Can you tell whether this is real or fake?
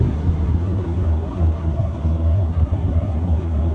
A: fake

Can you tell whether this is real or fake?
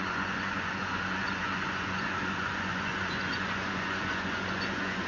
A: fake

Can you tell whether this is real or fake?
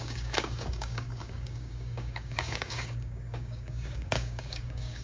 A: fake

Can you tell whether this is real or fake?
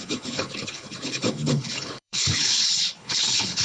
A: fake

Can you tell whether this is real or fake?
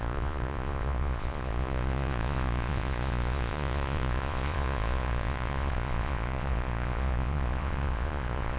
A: fake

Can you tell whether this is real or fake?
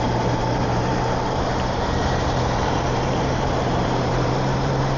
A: fake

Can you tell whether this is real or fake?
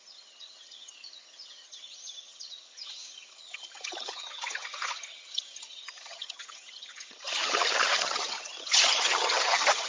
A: fake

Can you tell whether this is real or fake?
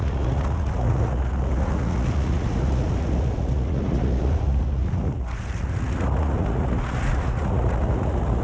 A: fake